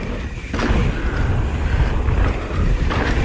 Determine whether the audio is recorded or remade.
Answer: recorded